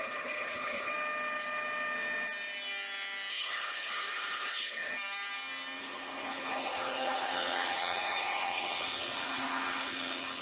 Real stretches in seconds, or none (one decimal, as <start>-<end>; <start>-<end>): 0.9-3.3; 4.9-5.8